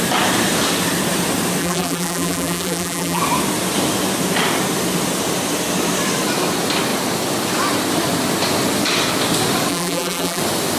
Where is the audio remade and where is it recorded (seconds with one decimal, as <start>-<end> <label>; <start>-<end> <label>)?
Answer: 0.0-1.6 recorded; 1.6-3.2 remade; 3.2-9.7 recorded; 9.7-10.4 remade; 10.4-10.8 recorded